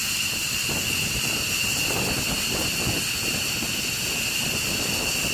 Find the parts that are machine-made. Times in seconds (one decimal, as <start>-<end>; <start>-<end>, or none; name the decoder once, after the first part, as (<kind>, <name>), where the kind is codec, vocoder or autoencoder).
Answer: none